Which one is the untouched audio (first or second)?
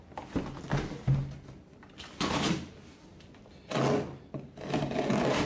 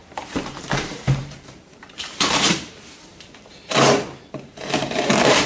first